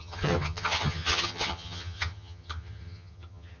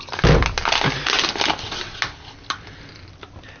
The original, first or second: second